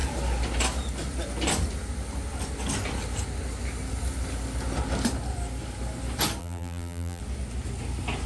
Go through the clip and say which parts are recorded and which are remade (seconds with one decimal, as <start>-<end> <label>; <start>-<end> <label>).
0.0-6.4 recorded; 6.4-7.2 remade; 7.2-8.3 recorded